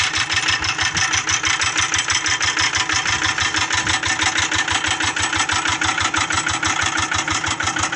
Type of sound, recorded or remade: recorded